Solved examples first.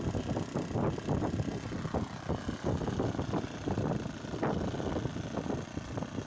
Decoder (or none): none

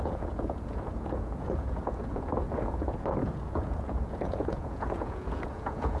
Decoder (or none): vocoder, Vocos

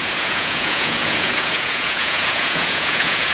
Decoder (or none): vocoder, Vocos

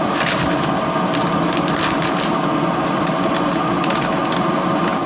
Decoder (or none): none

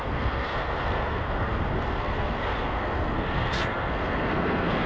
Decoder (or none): codec, SNAC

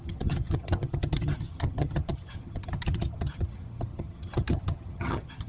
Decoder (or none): vocoder, HiFi-GAN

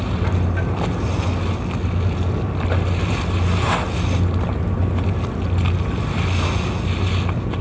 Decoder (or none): none